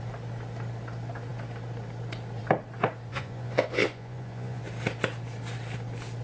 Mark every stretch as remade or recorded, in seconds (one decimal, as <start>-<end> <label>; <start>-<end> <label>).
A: 0.0-3.1 recorded; 3.1-4.6 remade; 4.6-6.2 recorded